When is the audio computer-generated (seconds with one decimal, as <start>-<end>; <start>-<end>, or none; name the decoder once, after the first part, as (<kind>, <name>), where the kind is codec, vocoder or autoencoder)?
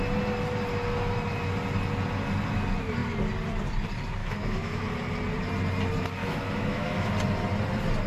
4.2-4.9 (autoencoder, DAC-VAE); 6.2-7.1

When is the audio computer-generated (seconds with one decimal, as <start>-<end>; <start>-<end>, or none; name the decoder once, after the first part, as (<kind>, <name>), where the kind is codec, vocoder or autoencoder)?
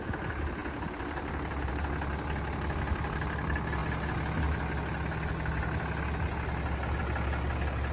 none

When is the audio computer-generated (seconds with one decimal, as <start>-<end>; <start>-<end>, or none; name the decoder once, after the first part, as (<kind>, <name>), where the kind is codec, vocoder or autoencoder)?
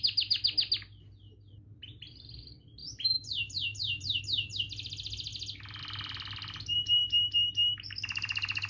2.8-4.2 (vocoder, BigVGAN v2)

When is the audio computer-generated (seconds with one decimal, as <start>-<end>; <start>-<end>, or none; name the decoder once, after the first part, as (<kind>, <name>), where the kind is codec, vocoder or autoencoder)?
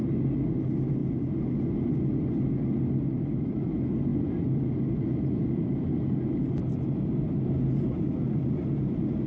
none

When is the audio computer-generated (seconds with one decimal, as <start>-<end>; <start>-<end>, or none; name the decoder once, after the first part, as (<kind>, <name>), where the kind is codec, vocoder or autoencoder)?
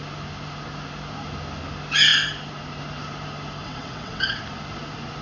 3.6-4.4 (vocoder, WaveNeXt)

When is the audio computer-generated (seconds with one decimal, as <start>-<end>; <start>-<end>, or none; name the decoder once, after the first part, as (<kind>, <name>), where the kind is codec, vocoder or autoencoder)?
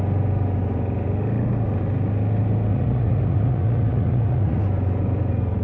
2.7-4.6 (vocoder, Vocos)